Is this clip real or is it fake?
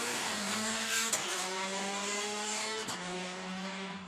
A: fake